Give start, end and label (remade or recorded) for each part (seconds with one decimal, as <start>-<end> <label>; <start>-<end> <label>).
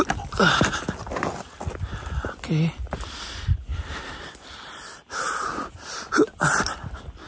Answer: 0.0-3.7 recorded; 3.7-5.3 remade; 5.3-7.3 recorded